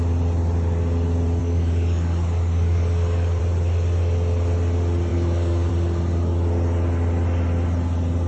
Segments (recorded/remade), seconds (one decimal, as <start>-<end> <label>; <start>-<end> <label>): 0.0-1.4 recorded; 1.4-3.4 remade; 3.4-5.1 recorded; 5.1-5.7 remade; 5.7-8.3 recorded